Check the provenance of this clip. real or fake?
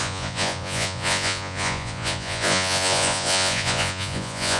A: fake